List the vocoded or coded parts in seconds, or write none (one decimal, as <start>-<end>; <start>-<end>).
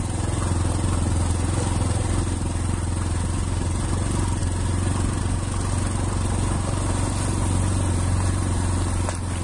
none